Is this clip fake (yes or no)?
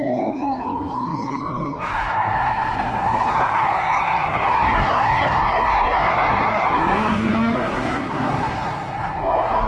yes